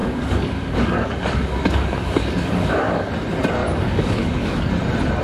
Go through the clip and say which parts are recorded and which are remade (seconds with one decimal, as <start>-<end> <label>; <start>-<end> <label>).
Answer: 0.0-3.1 remade; 3.1-3.6 recorded; 3.6-4.7 remade; 4.7-5.2 recorded

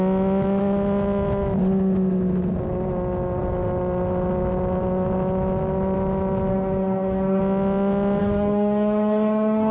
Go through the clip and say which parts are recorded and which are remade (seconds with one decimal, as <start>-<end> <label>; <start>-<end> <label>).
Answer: 0.0-6.5 recorded; 6.5-7.4 remade; 7.4-8.2 recorded; 8.2-9.7 remade

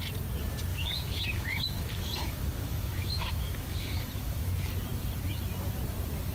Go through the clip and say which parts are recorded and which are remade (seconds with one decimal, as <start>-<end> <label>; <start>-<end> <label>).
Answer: 0.0-0.7 recorded; 0.7-4.5 remade; 4.5-6.3 recorded

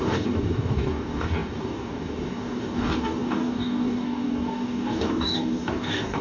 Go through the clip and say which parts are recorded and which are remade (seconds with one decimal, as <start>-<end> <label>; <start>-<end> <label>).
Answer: 0.0-6.2 remade

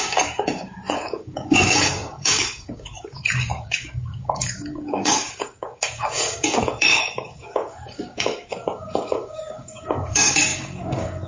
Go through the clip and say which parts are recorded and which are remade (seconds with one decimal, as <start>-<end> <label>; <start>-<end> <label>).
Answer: 0.0-11.3 remade

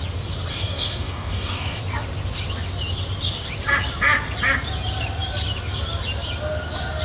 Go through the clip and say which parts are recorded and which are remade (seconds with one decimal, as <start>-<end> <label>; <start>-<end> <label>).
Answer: 0.0-0.5 recorded; 0.5-1.8 remade; 1.8-7.0 recorded

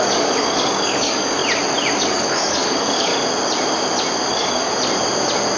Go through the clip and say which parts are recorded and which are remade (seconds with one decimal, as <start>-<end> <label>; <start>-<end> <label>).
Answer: 0.0-1.4 remade; 1.4-2.0 recorded; 2.0-3.1 remade; 3.1-4.3 recorded; 4.3-4.7 remade; 4.7-5.6 recorded

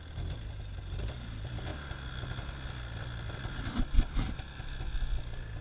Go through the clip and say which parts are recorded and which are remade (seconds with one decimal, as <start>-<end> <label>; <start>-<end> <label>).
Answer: 0.0-5.6 recorded